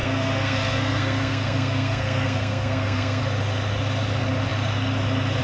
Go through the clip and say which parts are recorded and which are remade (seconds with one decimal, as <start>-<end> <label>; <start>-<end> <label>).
0.0-3.2 remade; 3.2-5.4 recorded